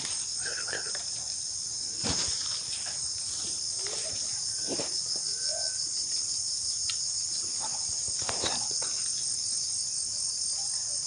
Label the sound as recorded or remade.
recorded